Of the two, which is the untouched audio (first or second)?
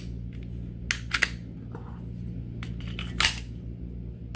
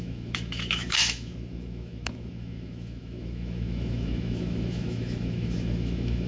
first